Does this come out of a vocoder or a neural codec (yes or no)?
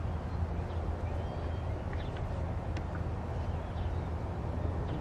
no